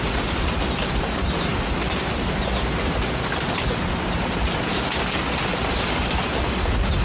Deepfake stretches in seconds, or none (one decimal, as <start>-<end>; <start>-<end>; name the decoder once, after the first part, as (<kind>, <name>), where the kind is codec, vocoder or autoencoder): none